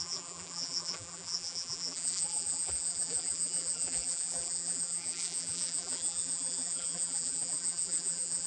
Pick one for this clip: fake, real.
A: fake